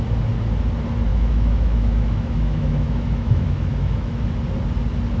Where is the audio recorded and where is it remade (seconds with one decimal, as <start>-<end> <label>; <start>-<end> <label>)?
0.0-1.1 recorded; 1.1-4.2 remade; 4.2-5.2 recorded

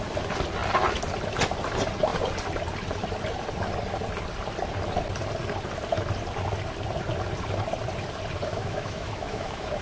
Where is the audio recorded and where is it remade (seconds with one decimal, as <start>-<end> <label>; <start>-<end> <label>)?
0.0-8.5 recorded; 8.5-9.8 remade

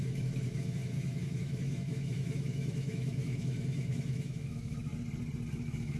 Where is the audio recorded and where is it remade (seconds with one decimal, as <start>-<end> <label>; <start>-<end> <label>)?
0.0-4.9 remade; 4.9-5.5 recorded; 5.5-6.0 remade

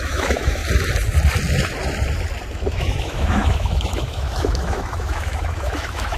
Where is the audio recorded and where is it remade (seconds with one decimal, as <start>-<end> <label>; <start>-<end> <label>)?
0.0-0.6 remade; 0.6-2.5 recorded; 2.5-6.2 remade

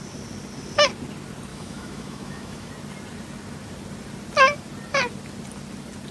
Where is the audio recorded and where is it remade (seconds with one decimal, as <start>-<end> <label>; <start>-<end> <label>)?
0.0-1.5 recorded; 1.5-2.7 remade; 2.7-6.1 recorded

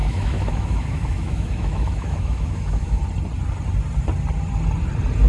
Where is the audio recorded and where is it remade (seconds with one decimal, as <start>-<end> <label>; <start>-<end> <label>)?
0.0-3.0 remade; 3.0-5.3 recorded